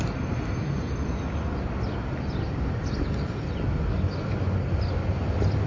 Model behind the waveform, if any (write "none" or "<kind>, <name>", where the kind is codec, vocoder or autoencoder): none